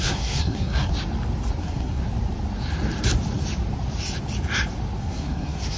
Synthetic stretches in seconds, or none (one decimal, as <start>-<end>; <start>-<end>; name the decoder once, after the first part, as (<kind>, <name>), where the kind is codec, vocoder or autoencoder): 0.0-0.9 (codec, SNAC); 1.6-2.0; 5.0-5.8